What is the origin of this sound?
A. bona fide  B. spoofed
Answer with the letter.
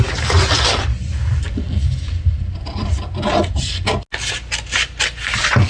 A